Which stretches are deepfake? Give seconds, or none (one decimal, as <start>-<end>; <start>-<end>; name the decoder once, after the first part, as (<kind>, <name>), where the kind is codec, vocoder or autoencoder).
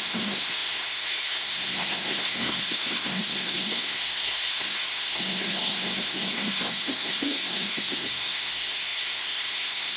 0.0-10.0 (codec, SNAC)